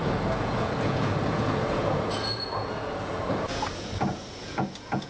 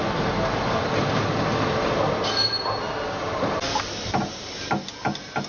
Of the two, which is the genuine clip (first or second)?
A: second